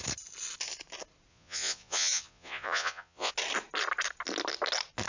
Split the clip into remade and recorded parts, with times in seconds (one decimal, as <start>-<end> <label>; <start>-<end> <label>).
0.0-1.3 recorded; 1.3-3.3 remade; 3.3-5.1 recorded